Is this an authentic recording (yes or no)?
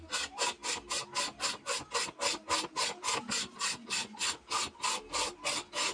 yes